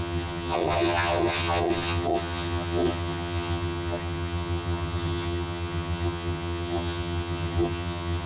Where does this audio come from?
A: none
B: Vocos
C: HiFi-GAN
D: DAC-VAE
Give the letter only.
C